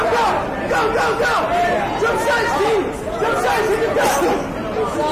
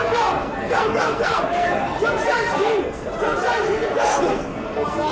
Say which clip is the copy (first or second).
second